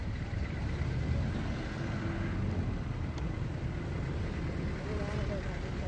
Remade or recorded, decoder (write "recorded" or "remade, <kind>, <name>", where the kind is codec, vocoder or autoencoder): recorded